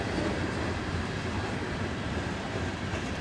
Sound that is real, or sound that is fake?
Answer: fake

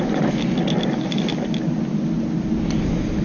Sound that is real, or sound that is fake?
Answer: real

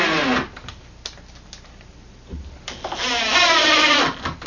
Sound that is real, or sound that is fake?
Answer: real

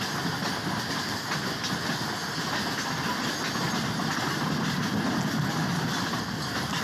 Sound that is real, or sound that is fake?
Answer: real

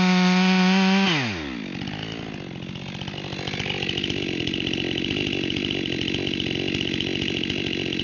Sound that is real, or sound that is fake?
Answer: real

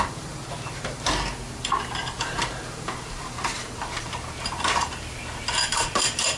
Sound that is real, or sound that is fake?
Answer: fake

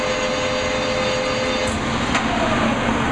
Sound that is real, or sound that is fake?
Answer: fake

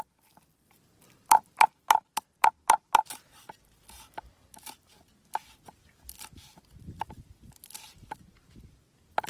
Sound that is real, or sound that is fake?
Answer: fake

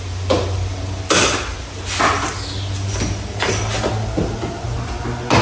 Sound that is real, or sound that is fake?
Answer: real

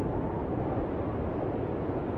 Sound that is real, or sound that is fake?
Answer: real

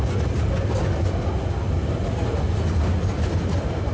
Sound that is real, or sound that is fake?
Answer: real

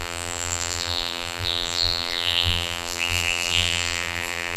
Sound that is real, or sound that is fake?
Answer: fake